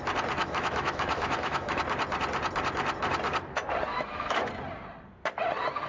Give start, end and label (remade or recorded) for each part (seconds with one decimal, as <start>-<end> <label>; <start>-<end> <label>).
0.0-0.4 recorded; 0.4-1.8 remade; 1.8-3.9 recorded; 3.9-4.5 remade; 4.5-5.9 recorded